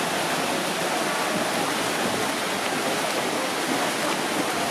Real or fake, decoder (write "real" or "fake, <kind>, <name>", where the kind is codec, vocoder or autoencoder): real